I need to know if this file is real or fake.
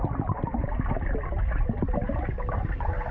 real